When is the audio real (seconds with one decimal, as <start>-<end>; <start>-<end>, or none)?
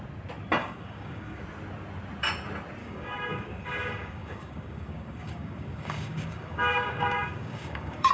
0.0-0.6; 1.4-2.8